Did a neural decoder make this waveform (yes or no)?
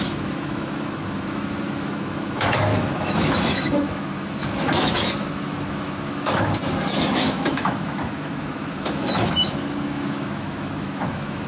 yes